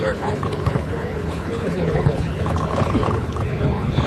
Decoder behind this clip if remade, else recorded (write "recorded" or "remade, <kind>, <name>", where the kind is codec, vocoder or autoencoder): remade, codec, HILCodec